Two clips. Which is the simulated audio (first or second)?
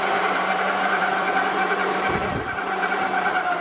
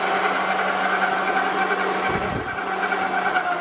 first